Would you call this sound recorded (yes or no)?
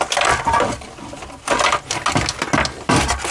yes